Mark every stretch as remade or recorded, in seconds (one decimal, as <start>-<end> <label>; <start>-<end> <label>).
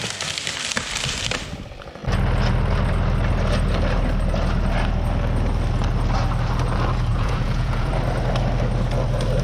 0.0-7.1 recorded; 7.1-7.9 remade; 7.9-9.4 recorded